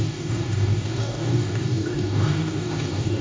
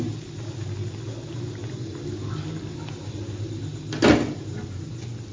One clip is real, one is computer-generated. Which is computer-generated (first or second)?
first